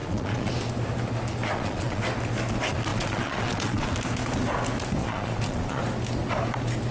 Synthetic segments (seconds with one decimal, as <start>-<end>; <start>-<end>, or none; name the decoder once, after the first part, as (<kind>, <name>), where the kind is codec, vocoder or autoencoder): 0.0-0.5 (vocoder, Vocos); 1.4-2.0; 2.9-3.9; 5.0-5.8